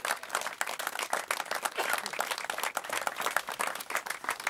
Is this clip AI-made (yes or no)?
no